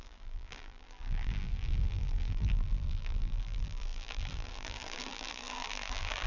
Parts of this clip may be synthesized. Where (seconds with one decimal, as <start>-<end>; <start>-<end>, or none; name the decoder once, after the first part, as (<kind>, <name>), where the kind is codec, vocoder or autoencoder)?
0.0-6.3 (vocoder, BigVGAN v2)